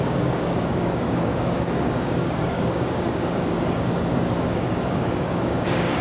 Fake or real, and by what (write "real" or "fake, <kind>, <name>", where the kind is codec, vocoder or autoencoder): fake, codec, DAC